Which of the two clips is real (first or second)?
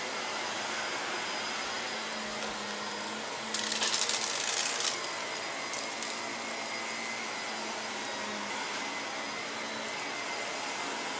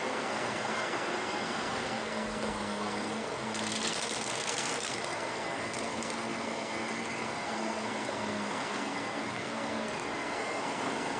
first